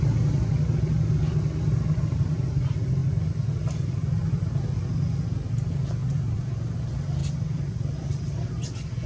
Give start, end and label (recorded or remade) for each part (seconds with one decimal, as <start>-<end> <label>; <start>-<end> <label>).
0.0-6.0 recorded; 6.0-6.8 remade; 6.8-7.2 recorded; 7.2-8.5 remade; 8.5-9.1 recorded